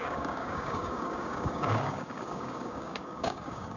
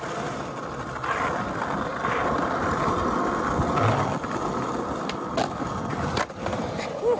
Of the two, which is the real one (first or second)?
second